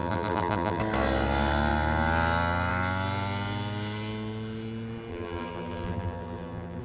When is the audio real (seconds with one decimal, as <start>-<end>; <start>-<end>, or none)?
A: 0.8-5.1